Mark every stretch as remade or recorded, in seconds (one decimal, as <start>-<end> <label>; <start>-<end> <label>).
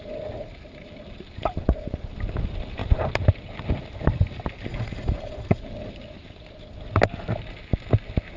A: 0.0-4.7 recorded; 4.7-5.6 remade; 5.6-8.4 recorded